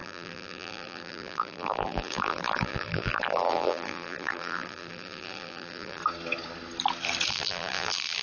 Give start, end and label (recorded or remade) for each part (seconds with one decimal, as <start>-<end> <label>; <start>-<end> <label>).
0.0-6.0 remade; 6.0-7.3 recorded; 7.3-8.2 remade